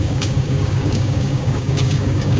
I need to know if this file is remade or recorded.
remade